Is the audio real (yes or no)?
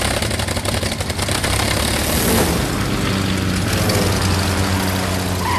yes